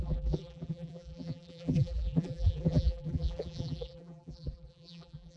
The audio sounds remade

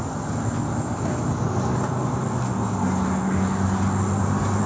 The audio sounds recorded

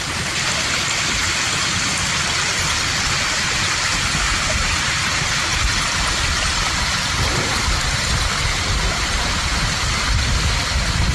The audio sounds recorded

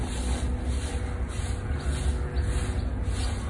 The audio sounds recorded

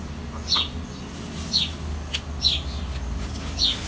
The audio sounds recorded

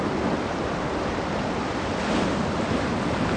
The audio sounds recorded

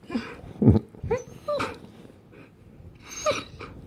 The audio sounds remade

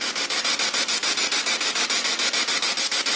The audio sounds recorded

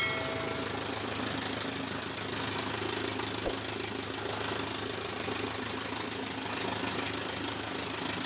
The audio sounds recorded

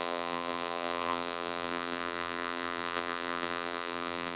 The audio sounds remade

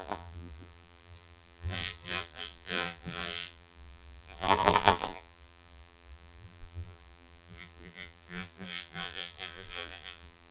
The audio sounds remade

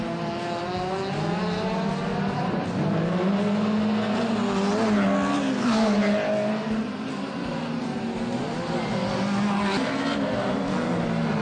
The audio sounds recorded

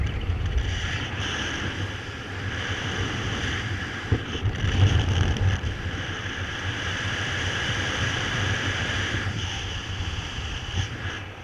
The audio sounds remade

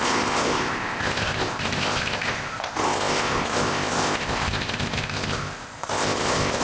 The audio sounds remade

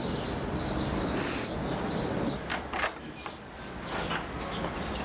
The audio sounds recorded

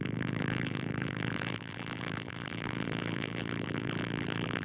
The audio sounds remade